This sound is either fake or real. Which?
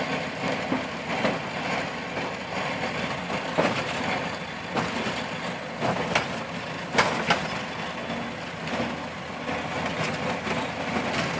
real